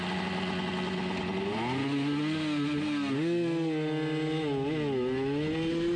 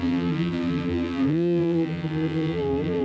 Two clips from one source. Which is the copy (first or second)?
second